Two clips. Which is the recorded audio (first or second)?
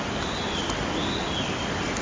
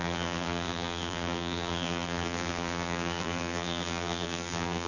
first